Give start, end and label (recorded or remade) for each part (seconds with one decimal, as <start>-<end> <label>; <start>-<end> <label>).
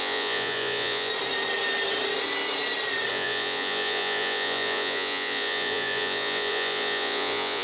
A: 0.0-1.1 remade; 1.1-3.1 recorded; 3.1-7.6 remade